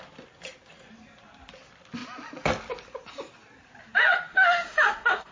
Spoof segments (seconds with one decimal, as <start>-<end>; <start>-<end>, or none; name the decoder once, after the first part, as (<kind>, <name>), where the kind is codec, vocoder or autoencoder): 4.3-5.3 (autoencoder, DAC-VAE)